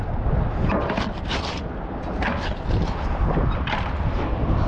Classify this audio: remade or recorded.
recorded